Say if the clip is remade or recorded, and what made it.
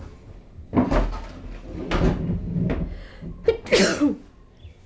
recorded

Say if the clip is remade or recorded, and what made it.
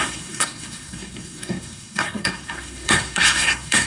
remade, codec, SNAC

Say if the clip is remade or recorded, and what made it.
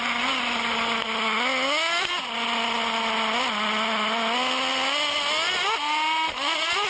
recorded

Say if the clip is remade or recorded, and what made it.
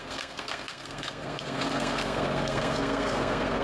remade, codec, SNAC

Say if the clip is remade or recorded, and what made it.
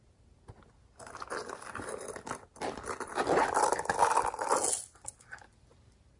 recorded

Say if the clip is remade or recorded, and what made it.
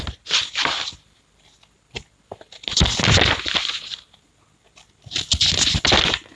recorded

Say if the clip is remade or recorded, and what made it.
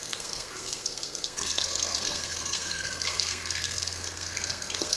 remade, codec, SNAC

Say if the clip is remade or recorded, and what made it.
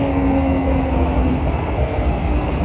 remade, codec, SNAC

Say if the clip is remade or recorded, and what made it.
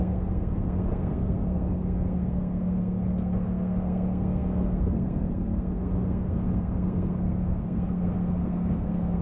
remade, codec, SNAC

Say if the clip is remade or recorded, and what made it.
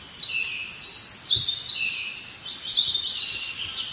recorded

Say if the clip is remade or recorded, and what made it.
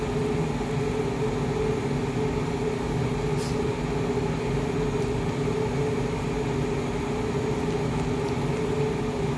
recorded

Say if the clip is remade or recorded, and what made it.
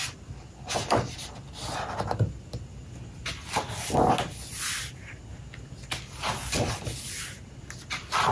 recorded